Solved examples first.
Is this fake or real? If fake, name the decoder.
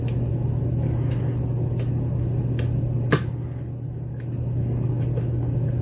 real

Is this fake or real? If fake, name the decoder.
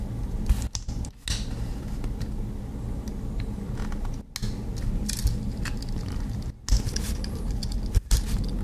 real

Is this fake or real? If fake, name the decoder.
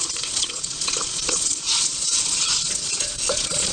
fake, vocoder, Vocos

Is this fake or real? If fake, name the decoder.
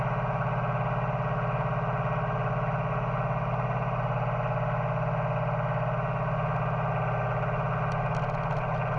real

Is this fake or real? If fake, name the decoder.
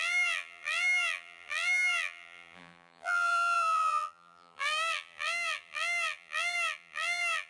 fake, vocoder, BigVGAN v2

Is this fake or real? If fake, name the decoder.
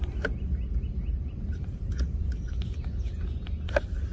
real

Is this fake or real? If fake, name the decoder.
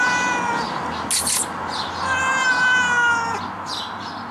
real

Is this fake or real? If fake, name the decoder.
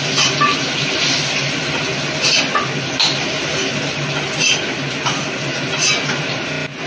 real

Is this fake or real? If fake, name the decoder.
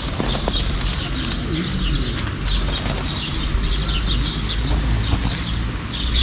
real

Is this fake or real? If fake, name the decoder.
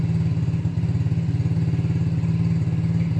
real